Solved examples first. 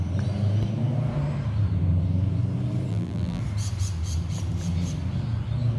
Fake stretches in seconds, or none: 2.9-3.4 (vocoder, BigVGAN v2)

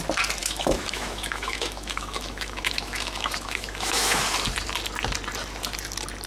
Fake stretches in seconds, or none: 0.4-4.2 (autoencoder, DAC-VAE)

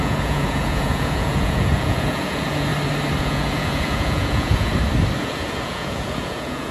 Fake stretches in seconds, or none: 0.0-2.7 (vocoder, Vocos); 3.2-4.7; 5.2-6.7